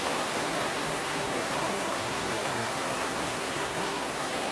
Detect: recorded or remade remade